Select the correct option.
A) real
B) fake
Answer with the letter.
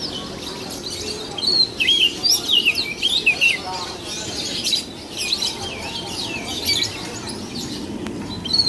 A